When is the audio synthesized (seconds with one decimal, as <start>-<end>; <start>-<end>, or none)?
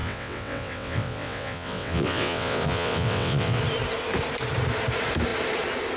0.0-3.6